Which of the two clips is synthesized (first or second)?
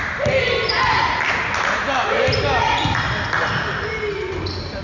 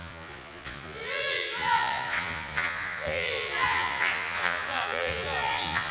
second